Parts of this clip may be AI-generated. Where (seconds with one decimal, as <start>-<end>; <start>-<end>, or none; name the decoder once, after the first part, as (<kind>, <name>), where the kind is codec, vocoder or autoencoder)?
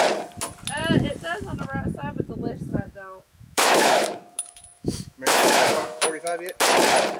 2.7-6.3 (autoencoder, DAC-VAE)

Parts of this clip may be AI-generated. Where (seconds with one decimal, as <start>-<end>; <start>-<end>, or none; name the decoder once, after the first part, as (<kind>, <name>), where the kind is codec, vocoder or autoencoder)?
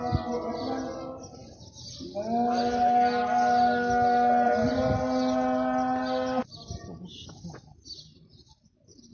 none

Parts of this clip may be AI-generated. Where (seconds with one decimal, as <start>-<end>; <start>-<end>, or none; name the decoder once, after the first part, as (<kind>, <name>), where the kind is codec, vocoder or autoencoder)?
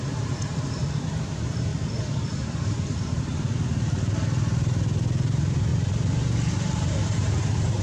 0.0-1.7 (vocoder, BigVGAN v2); 2.7-3.3; 5.3-5.7; 6.5-7.8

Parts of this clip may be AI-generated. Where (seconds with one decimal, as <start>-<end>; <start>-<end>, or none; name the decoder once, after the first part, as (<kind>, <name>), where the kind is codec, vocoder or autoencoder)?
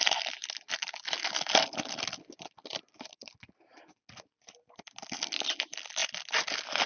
none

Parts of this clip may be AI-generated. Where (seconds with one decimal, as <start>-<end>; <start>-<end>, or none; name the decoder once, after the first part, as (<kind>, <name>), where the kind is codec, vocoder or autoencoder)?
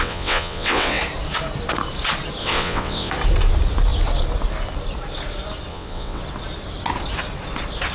0.0-1.0 (vocoder, WaveNeXt); 2.4-3.1; 5.7-6.2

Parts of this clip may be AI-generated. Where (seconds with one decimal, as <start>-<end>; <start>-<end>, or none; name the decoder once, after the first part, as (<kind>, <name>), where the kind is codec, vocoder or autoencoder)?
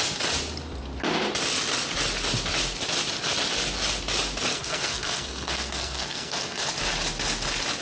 4.5-6.7 (codec, SNAC)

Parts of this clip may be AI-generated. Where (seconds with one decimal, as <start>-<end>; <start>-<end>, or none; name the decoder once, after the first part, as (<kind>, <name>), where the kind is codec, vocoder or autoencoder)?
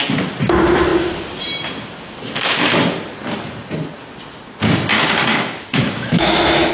5.3-6.7 (autoencoder, DAC-VAE)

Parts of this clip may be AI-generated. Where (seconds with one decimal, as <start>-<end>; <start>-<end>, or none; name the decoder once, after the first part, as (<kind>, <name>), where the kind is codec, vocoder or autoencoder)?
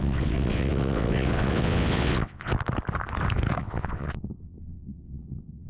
0.0-2.5 (vocoder, WaveNeXt); 3.6-5.7